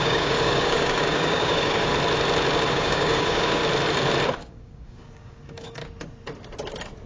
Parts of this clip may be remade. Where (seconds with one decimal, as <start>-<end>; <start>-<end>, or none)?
0.0-1.9; 2.7-3.6; 4.4-5.8